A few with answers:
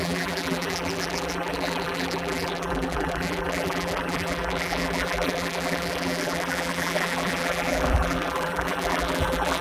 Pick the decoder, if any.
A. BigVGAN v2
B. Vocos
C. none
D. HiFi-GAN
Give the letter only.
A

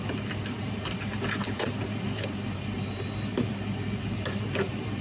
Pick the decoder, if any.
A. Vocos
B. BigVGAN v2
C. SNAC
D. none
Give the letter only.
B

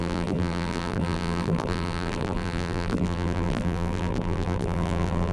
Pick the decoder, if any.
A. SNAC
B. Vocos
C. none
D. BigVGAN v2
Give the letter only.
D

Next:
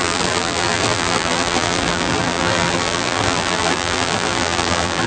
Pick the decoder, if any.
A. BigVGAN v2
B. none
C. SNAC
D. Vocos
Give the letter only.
A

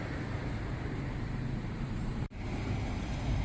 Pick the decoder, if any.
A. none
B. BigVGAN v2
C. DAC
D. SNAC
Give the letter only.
B